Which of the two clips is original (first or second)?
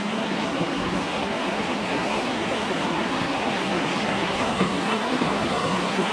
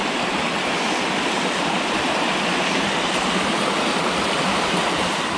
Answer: second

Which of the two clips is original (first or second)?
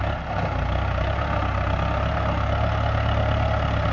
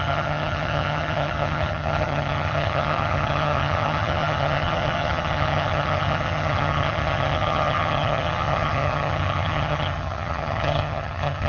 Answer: first